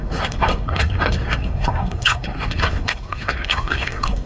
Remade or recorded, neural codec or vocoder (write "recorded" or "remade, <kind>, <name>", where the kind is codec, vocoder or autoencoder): remade, codec, SNAC